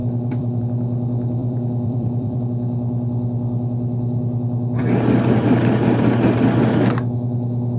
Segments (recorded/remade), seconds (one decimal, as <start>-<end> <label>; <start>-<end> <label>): 0.0-0.6 remade; 0.6-1.4 recorded; 1.4-2.4 remade; 2.4-7.8 recorded